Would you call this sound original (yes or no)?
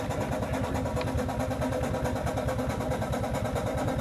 yes